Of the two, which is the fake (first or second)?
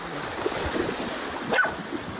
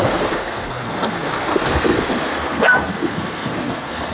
second